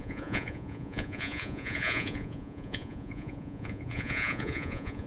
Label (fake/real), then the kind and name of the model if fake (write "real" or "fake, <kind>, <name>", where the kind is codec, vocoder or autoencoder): fake, vocoder, Vocos